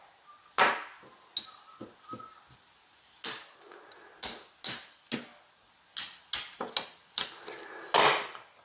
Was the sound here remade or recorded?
recorded